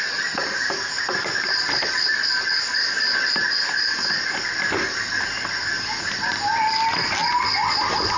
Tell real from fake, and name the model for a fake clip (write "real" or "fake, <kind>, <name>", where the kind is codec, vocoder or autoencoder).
real